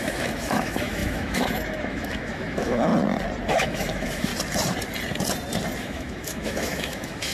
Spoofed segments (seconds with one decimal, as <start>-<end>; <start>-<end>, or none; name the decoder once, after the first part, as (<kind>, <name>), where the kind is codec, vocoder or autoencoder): 0.0-2.9 (autoencoder, DAC-VAE); 3.5-4.3; 5.8-7.3

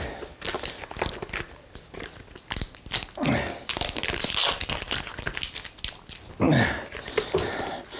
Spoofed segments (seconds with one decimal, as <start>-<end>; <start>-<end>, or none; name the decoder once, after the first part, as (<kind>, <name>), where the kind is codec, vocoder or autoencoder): none

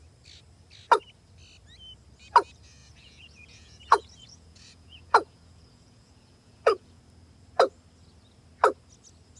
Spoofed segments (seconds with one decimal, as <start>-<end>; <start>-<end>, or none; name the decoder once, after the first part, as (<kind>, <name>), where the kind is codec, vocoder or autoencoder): 2.8-7.0 (vocoder, Vocos)

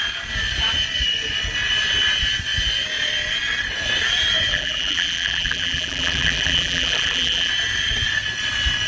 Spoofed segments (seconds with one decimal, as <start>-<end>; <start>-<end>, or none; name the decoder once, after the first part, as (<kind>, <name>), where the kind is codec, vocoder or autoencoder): 4.5-7.5 (vocoder, BigVGAN v2)

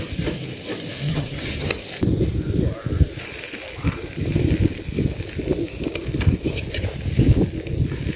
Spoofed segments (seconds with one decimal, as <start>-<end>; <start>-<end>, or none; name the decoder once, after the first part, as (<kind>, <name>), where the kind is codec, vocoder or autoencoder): 1.1-1.8 (vocoder, HiFi-GAN)

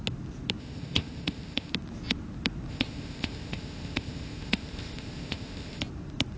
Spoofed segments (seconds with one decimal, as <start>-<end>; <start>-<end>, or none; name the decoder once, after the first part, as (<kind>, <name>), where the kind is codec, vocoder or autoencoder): 0.6-1.7 (codec, ZipCodec); 2.7-5.8

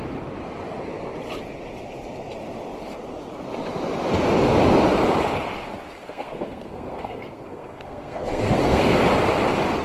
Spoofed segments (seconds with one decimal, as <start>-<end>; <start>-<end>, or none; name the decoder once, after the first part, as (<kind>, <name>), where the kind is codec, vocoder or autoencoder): 6.0-9.0 (codec, SNAC)

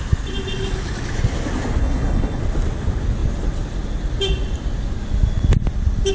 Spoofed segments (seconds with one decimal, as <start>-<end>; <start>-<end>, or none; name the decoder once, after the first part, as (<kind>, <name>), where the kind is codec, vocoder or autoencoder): 1.8-2.4 (codec, HILCodec)